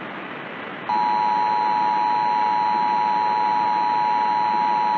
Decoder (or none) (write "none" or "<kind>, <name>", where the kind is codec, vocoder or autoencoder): none